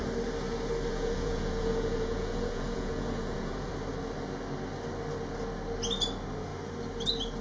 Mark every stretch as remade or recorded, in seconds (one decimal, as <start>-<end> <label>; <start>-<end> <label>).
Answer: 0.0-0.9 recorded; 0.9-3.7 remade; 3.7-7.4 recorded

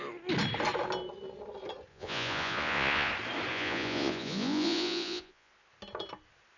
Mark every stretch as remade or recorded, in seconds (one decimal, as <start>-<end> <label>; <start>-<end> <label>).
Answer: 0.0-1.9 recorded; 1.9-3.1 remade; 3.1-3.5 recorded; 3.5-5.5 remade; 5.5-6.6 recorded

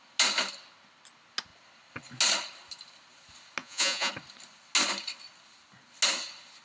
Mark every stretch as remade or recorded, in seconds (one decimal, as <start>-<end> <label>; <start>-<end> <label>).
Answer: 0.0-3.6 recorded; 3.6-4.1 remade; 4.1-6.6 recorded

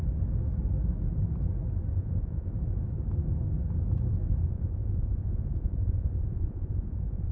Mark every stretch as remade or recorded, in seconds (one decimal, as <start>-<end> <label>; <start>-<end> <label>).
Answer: 0.0-1.9 recorded; 1.9-2.5 remade; 2.5-4.4 recorded; 4.4-7.3 remade